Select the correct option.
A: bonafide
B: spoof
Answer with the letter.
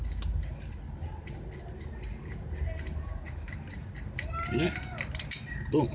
A